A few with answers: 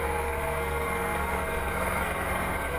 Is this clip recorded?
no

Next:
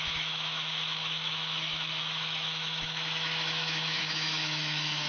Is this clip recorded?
no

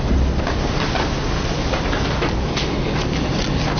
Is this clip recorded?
yes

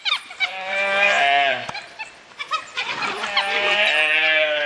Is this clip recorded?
no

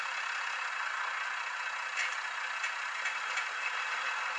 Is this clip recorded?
yes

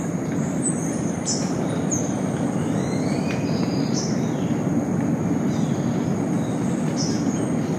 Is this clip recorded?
yes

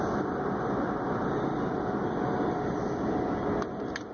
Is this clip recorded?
yes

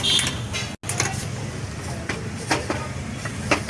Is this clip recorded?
yes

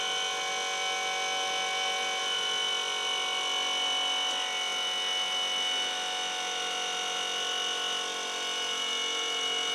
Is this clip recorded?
yes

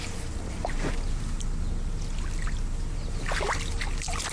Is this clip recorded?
yes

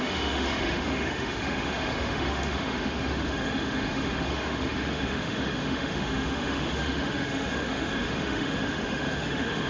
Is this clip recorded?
no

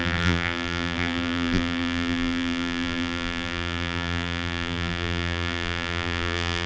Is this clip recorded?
no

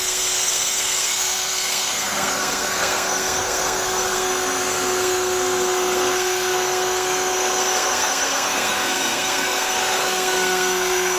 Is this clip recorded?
no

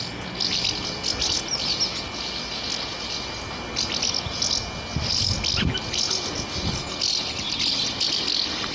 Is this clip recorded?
yes